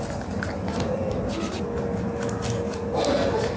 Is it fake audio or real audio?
real